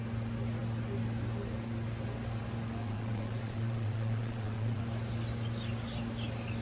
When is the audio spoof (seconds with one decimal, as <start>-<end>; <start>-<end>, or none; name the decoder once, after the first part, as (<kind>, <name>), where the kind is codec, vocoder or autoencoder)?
2.8-4.8 (vocoder, WaveNeXt)